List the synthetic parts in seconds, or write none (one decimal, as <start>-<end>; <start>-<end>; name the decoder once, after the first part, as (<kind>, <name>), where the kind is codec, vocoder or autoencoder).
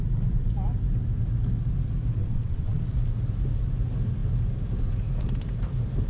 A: 2.2-2.8 (vocoder, WaveNeXt)